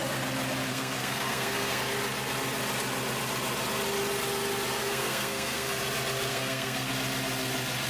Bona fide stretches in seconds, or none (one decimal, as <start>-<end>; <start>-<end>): 0.0-0.7; 1.8-4.8; 5.8-6.3; 6.9-7.9